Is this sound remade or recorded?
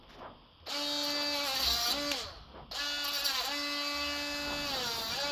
recorded